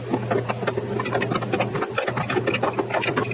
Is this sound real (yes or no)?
yes